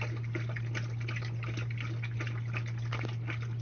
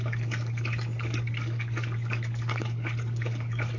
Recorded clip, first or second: first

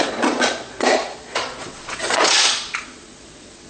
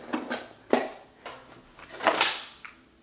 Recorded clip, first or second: second